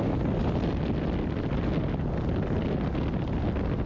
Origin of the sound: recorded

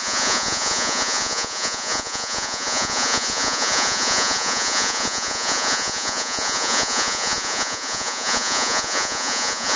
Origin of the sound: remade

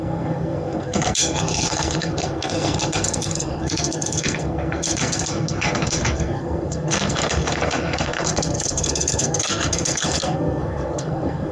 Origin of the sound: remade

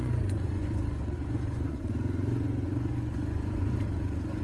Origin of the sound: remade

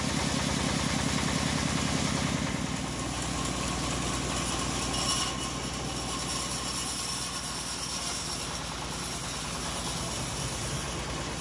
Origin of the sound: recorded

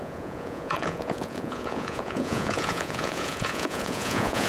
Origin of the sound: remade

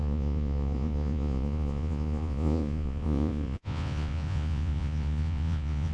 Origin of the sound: remade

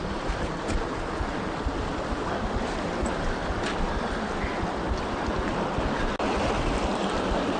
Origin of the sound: recorded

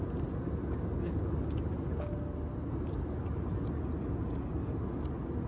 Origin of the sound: recorded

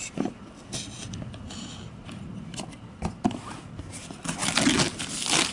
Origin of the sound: recorded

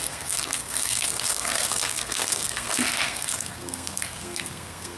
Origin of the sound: remade